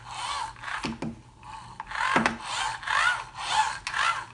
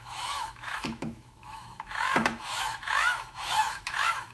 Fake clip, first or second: second